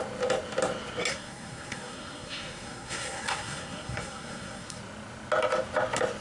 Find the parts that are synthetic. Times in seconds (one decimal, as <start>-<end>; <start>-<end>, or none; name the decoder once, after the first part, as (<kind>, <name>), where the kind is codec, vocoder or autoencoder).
1.1-4.8 (codec, SNAC)